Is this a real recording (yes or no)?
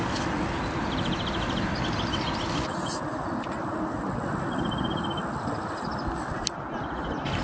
yes